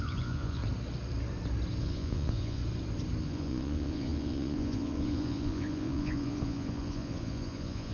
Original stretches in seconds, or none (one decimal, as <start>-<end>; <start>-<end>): 0.6-1.8; 2.6-3.2